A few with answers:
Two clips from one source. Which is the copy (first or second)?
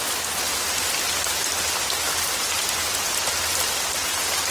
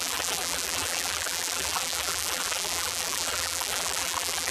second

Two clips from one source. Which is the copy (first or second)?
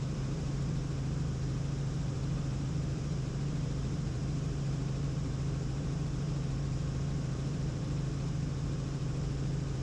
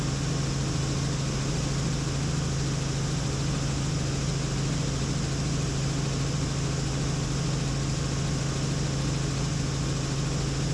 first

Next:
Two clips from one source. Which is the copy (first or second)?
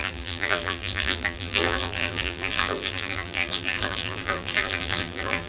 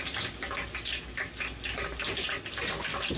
first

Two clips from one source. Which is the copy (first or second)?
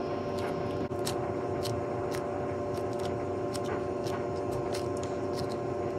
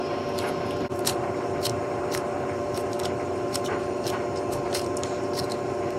second